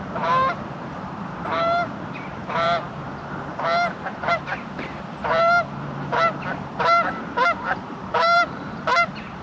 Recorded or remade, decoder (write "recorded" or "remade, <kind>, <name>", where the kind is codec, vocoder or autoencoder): remade, vocoder, BigVGAN v2